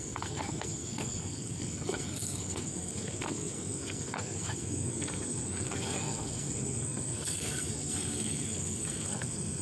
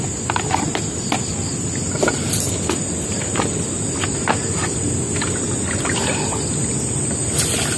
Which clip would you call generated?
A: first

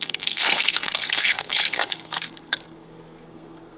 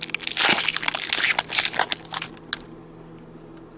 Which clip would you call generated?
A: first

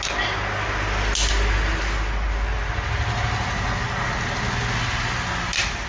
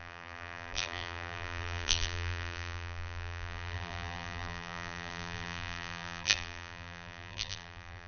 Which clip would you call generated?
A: second